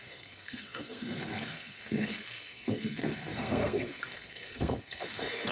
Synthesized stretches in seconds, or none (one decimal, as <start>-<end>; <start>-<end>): 0.0-5.5